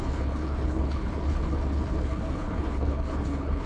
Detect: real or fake fake